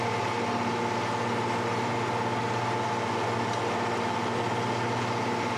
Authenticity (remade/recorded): recorded